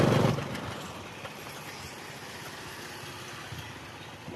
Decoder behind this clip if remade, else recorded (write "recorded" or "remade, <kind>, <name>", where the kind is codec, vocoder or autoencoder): recorded